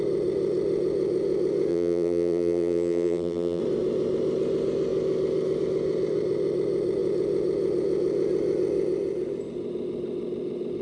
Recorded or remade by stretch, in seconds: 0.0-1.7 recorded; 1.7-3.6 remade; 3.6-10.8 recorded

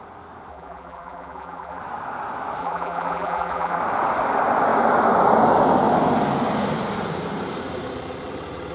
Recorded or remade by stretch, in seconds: 0.0-0.5 recorded; 0.5-1.8 remade; 1.8-2.6 recorded; 2.6-3.8 remade; 3.8-8.7 recorded

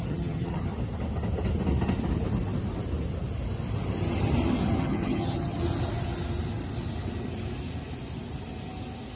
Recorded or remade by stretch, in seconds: 0.0-0.7 remade; 0.7-4.8 recorded; 4.8-5.6 remade; 5.6-9.2 recorded

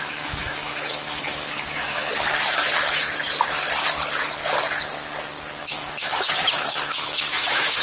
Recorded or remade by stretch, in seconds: 0.0-2.1 remade; 2.1-5.6 recorded; 5.6-7.8 remade

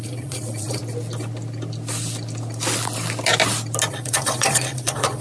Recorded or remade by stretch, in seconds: 0.0-0.8 remade; 0.8-3.9 recorded; 3.9-5.2 remade

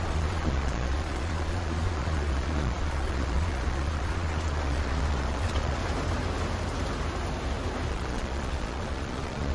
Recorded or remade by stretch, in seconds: 0.0-5.8 remade; 5.8-7.9 recorded; 7.9-9.5 remade

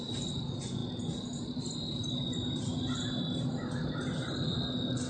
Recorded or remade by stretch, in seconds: 0.0-5.1 recorded

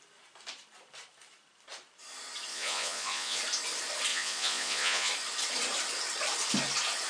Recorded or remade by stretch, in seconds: 0.0-2.5 recorded; 2.5-3.4 remade; 3.4-4.1 recorded; 4.1-5.1 remade; 5.1-7.1 recorded